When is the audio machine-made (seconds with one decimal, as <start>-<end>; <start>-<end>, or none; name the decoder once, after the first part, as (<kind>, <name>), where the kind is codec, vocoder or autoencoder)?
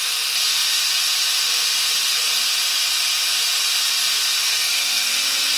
4.5-5.1 (codec, SNAC)